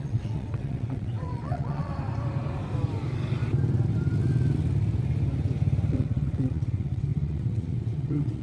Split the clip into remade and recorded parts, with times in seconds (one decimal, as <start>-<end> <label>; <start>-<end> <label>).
0.0-1.9 remade; 1.9-5.9 recorded; 5.9-8.4 remade